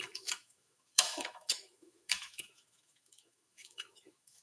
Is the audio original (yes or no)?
no